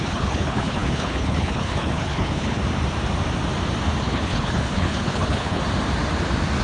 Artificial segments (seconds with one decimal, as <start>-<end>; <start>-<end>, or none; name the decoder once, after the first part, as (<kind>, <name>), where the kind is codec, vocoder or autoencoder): 0.0-2.6 (codec, HILCodec); 4.0-5.6